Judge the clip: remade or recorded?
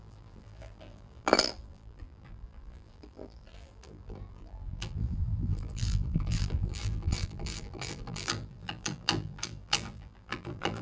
remade